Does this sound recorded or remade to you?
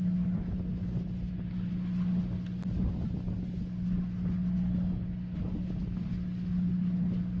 recorded